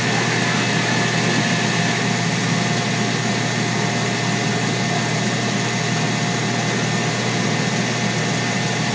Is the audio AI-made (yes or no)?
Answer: no